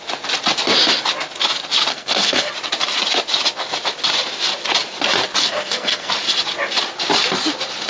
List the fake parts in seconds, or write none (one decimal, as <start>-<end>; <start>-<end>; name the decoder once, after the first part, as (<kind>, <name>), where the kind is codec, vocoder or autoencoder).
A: 1.9-2.5 (codec, SNAC); 5.4-6.1